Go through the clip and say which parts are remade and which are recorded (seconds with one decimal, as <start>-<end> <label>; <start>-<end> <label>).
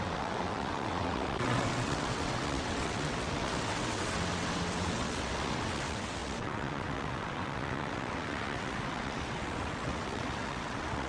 0.0-11.1 remade